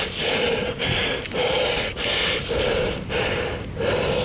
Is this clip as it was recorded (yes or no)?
yes